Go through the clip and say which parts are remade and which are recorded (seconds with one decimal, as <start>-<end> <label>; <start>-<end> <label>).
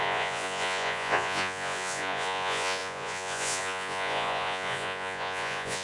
0.0-5.8 remade